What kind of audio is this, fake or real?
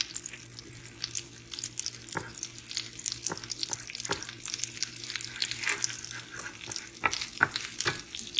real